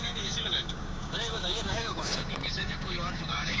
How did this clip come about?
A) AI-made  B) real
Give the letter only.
A